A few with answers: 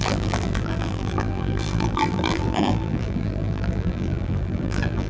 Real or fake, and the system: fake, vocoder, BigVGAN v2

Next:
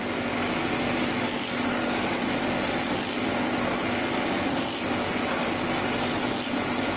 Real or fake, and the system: real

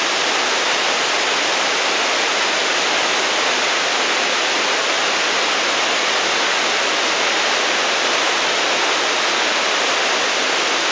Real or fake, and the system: real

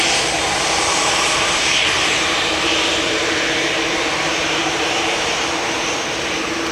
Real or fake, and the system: fake, vocoder, BigVGAN v2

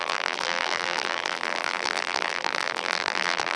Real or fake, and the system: fake, vocoder, BigVGAN v2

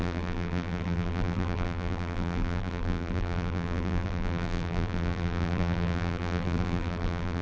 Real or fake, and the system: fake, vocoder, BigVGAN v2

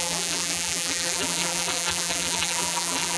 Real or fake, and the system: fake, vocoder, BigVGAN v2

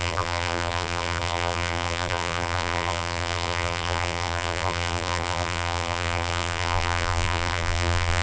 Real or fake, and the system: fake, vocoder, BigVGAN v2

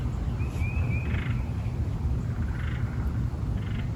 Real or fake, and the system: real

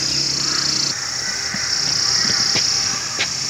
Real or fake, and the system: real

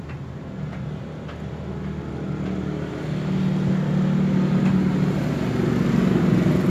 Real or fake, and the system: real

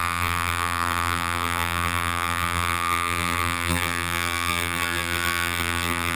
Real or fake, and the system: fake, vocoder, BigVGAN v2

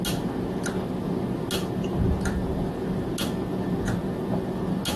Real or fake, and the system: real